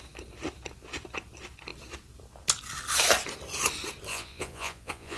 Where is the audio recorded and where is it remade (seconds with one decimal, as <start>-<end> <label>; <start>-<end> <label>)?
0.0-4.1 recorded; 4.1-5.2 remade